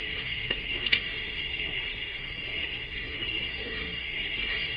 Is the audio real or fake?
fake